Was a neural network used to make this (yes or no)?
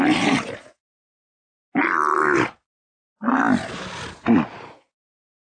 no